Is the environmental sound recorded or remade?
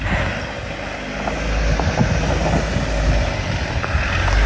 recorded